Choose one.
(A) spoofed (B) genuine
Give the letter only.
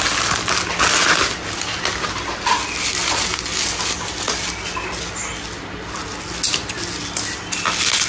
B